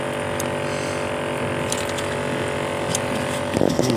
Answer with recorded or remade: recorded